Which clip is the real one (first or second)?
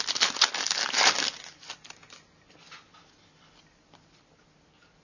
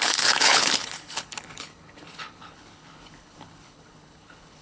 first